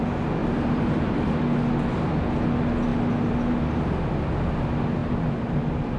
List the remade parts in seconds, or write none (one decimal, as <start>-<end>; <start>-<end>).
0.4-1.4; 5.0-6.0